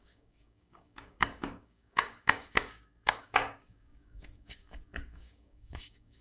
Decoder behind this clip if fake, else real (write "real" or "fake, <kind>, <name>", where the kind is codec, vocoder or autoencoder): fake, codec, DAC